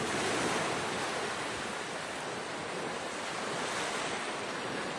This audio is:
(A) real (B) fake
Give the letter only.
A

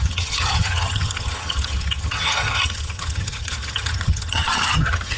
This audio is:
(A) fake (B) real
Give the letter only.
A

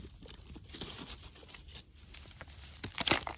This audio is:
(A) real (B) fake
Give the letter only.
B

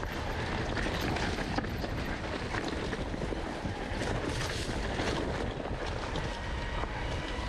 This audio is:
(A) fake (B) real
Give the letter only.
B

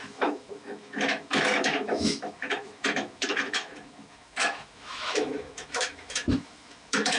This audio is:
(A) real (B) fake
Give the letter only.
B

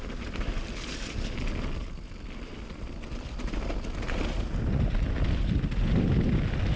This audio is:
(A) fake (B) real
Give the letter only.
B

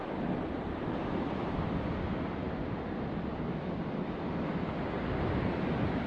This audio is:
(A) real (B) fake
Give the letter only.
A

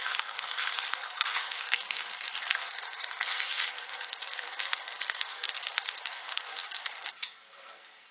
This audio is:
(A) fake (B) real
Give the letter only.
A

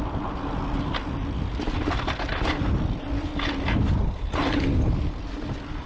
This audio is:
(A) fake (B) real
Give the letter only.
B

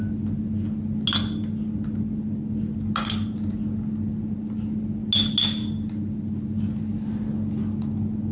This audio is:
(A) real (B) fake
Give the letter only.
A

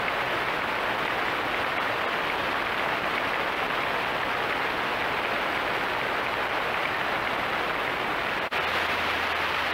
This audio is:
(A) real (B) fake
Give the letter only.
A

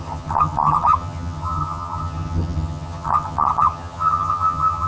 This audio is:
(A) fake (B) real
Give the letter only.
A